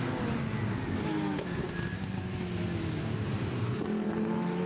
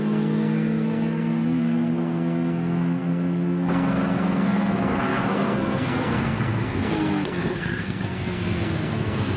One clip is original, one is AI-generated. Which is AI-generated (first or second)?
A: second